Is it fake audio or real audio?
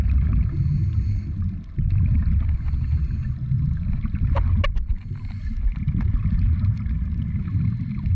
real